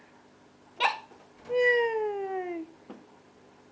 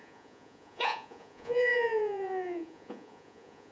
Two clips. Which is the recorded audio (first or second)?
first